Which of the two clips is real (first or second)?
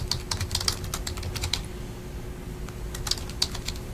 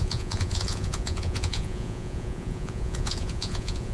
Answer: first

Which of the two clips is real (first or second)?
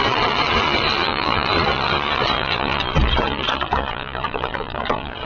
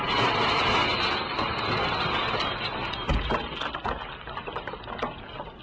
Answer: second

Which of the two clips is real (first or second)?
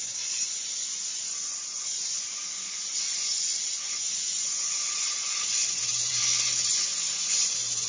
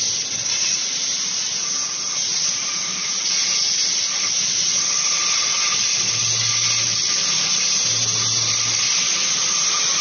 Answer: second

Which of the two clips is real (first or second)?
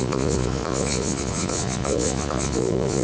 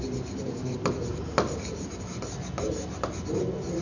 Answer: second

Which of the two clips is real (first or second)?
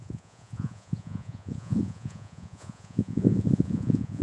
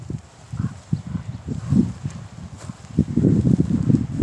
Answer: second